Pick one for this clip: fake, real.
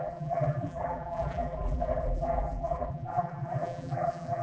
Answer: fake